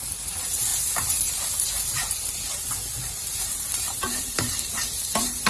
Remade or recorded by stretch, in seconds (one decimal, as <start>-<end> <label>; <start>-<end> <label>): 0.0-5.5 remade